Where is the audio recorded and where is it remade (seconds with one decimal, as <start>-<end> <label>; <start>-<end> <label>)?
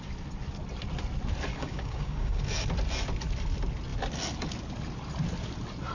0.0-1.5 recorded; 1.5-2.4 remade; 2.4-5.9 recorded